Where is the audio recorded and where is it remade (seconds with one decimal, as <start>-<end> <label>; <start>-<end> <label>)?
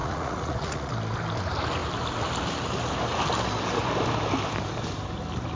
0.0-0.9 remade; 0.9-5.6 recorded